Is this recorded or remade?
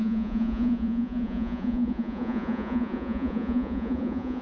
remade